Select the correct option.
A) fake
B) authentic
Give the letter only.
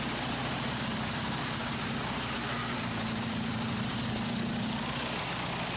A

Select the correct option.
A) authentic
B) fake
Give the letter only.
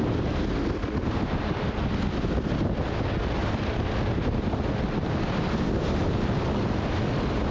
A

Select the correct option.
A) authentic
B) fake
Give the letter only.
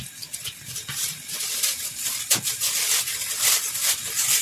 B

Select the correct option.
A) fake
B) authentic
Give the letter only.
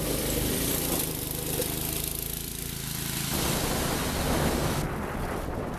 A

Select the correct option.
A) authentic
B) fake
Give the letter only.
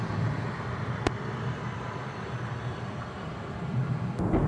B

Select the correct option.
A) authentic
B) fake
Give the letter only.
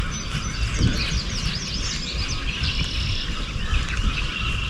A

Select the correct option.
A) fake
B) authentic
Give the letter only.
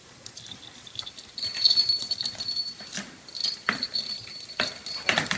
A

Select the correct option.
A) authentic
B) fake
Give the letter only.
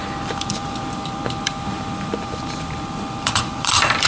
B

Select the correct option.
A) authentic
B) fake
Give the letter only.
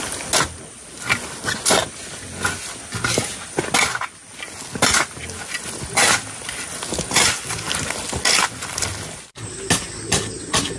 A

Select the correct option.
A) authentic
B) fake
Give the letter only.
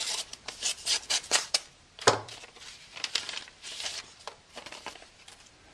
B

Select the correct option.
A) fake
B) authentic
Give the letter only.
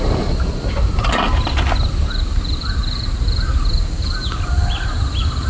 A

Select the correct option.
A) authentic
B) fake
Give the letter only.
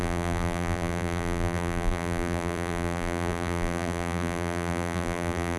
B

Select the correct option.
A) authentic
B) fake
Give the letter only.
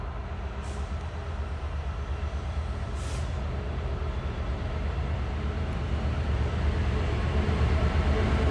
B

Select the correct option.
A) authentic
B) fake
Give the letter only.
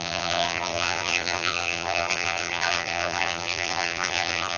B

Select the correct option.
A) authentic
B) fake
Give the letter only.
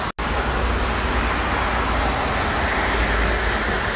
A